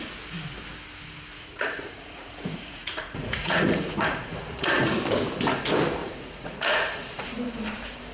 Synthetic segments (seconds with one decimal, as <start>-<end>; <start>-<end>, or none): 1.3-5.0; 6.0-7.2